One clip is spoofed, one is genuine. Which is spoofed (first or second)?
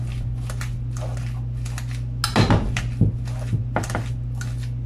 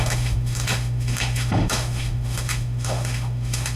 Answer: second